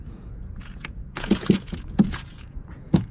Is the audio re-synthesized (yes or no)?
yes